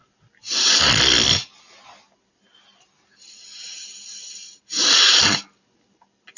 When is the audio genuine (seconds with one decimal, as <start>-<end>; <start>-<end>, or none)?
0.0-4.1; 5.2-6.4

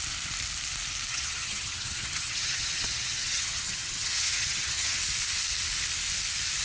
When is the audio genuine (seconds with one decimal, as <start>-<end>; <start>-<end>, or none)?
0.0-1.1; 5.0-6.6

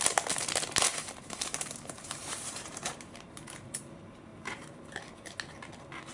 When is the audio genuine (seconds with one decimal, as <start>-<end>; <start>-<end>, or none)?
0.0-0.9; 3.8-4.3; 5.0-6.1

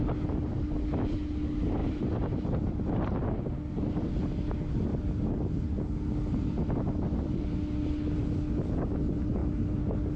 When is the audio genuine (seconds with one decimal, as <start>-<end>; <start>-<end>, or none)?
0.0-10.2

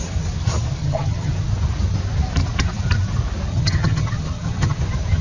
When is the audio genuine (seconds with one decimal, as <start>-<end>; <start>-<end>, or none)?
0.0-0.8; 1.3-3.5; 4.8-5.2